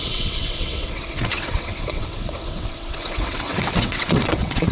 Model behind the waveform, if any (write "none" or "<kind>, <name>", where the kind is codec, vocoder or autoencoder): vocoder, WaveNeXt